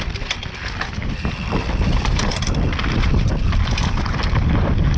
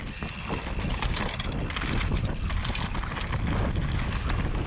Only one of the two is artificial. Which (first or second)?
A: first